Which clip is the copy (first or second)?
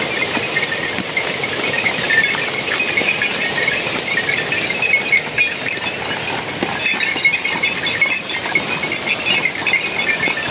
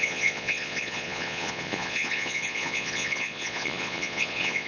second